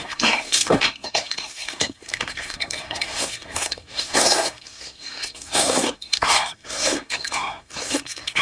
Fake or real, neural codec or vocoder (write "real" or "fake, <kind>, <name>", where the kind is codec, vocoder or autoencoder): fake, codec, SNAC